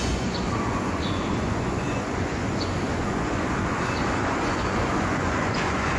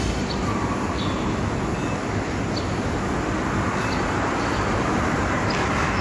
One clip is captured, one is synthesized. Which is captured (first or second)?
second